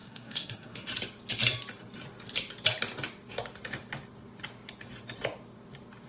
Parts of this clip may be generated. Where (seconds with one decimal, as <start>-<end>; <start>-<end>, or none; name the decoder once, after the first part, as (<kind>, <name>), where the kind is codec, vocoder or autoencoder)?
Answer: 0.0-0.9 (codec, SNAC)